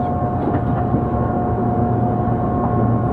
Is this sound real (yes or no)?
yes